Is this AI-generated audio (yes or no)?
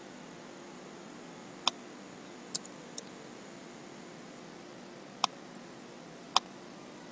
no